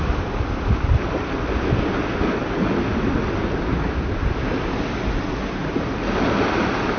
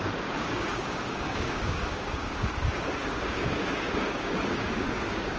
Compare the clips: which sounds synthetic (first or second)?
second